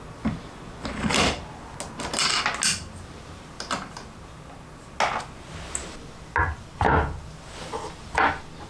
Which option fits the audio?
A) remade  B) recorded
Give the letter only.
B